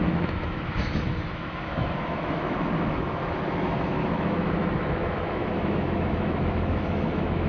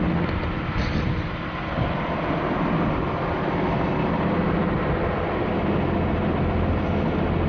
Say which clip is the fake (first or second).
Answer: first